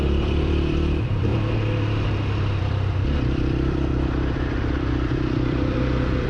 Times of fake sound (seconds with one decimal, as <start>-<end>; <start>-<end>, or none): 0.0-1.3; 2.6-6.3